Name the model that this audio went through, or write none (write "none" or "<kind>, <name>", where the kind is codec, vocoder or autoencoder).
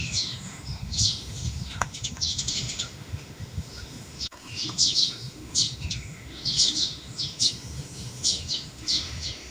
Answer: autoencoder, DAC-VAE